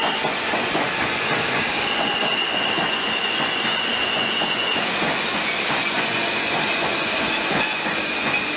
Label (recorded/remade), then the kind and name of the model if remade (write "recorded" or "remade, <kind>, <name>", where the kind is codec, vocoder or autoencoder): remade, vocoder, Vocos